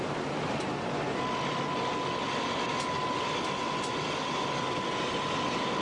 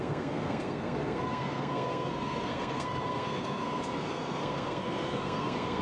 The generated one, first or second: second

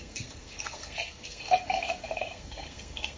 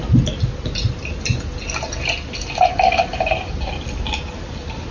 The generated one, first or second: first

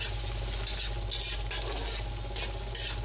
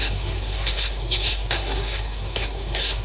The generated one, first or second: second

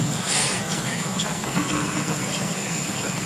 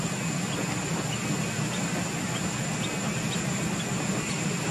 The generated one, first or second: first